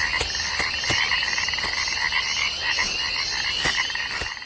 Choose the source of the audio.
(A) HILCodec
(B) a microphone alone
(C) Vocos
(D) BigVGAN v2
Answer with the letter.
B